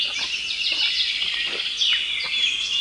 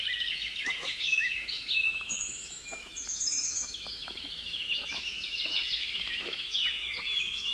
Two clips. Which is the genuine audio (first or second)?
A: first